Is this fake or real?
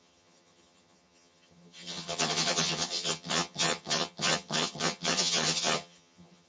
fake